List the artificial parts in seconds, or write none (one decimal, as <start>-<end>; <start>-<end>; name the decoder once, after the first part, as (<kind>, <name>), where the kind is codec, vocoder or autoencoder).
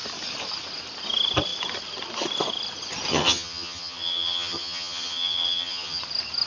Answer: 3.1-6.0 (vocoder, HiFi-GAN)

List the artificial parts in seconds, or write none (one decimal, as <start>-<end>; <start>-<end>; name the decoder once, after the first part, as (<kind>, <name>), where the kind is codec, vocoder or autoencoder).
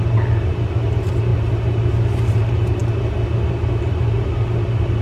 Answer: none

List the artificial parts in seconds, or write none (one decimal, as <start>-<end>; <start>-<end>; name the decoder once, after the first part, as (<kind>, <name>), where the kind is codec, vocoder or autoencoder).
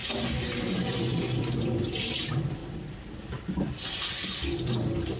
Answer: none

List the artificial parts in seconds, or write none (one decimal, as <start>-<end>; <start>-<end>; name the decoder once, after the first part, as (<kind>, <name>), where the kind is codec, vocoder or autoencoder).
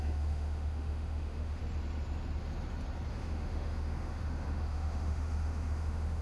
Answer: 0.0-1.6 (autoencoder, DAC-VAE); 3.1-6.2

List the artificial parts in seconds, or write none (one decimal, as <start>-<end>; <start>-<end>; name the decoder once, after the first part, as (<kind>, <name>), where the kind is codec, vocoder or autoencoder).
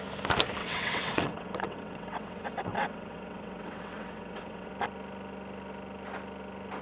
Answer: 0.6-4.7 (vocoder, WaveNeXt)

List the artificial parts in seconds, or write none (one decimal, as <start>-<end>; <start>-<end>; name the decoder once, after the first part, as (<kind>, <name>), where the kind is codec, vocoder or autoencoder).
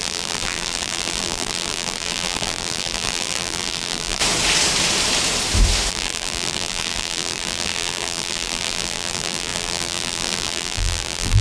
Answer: 0.0-4.2 (vocoder, BigVGAN v2); 5.9-11.4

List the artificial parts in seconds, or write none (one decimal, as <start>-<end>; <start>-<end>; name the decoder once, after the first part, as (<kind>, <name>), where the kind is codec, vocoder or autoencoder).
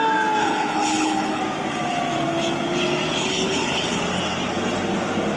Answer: 0.4-1.4 (codec, HILCodec); 3.2-4.0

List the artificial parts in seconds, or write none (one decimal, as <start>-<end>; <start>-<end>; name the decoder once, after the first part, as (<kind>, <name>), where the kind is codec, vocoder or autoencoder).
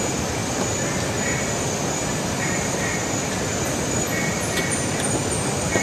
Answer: 0.0-0.4 (vocoder, BigVGAN v2); 2.3-3.0; 5.3-5.8